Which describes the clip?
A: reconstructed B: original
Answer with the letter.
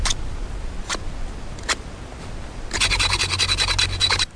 B